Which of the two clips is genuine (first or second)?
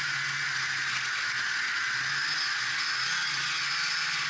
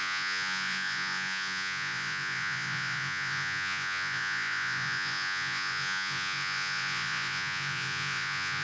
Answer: first